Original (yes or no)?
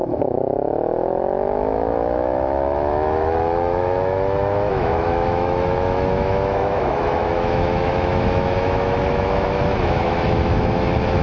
no